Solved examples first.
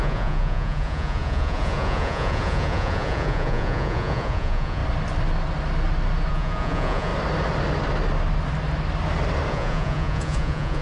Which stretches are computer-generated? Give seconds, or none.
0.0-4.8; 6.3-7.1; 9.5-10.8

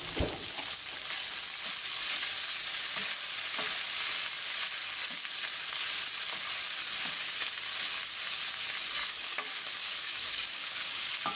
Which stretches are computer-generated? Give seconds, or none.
9.0-11.4

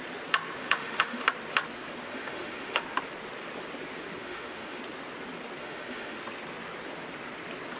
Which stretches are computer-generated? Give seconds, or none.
0.6-1.2; 2.1-2.8; 4.2-4.8; 5.6-6.2

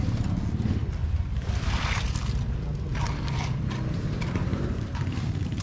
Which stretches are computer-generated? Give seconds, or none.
4.5-5.6

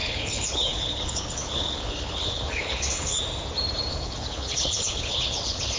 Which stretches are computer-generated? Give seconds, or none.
0.0-3.2; 3.9-5.8